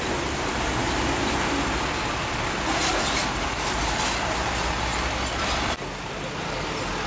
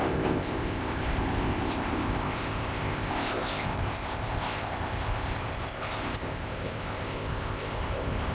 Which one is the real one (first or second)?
first